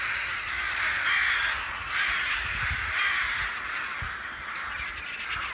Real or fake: real